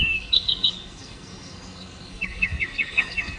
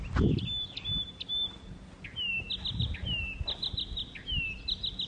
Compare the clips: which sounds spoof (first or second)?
first